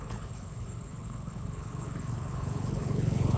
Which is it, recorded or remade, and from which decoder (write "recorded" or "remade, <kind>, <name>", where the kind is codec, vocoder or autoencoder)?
remade, codec, HILCodec